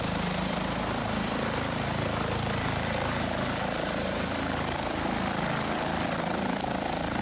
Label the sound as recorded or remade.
remade